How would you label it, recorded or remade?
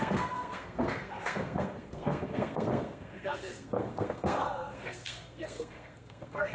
remade